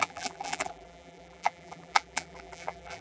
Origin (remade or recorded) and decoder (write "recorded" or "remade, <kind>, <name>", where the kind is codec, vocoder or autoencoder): remade, vocoder, BigVGAN v2